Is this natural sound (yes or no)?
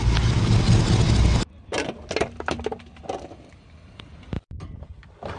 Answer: yes